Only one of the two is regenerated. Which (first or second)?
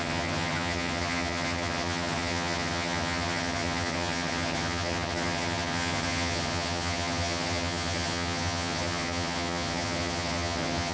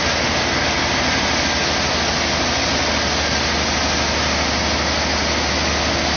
first